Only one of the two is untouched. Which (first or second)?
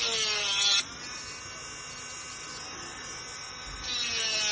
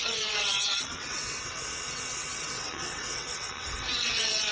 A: first